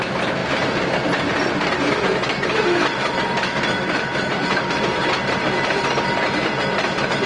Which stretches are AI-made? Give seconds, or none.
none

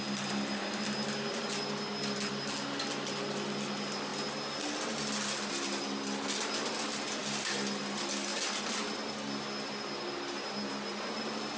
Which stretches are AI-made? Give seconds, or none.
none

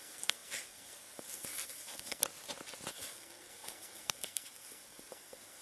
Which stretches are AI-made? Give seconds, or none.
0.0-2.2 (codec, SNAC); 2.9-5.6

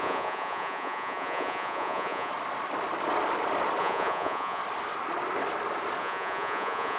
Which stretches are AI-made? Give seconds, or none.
0.0-2.3 (vocoder, Vocos); 3.8-4.6; 6.0-7.0

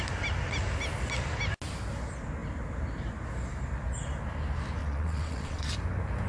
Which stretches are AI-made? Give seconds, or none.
4.8-5.7 (vocoder, WaveNeXt)

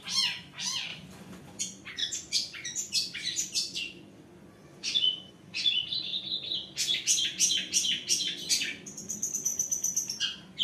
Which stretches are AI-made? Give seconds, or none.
0.0-6.1 (vocoder, Vocos); 8.5-9.5; 10.2-10.6

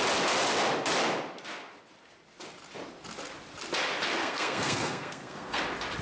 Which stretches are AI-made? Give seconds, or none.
4.2-5.6 (codec, SNAC)

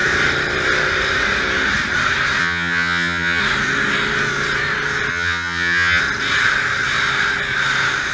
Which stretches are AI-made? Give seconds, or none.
2.4-3.4 (vocoder, HiFi-GAN); 5.1-6.0